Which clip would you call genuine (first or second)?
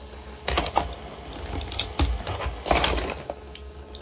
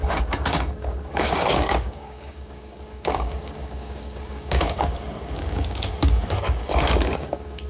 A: first